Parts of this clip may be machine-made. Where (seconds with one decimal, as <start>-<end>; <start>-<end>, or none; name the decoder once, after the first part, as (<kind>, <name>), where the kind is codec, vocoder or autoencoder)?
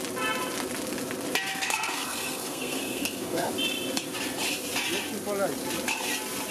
1.5-3.5 (codec, SNAC)